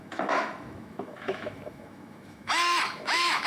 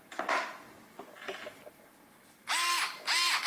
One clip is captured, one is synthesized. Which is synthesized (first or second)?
first